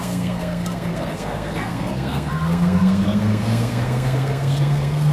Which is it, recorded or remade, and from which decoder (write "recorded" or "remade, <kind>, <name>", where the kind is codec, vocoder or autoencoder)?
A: remade, codec, SNAC